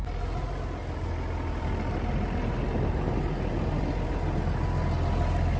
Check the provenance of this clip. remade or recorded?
recorded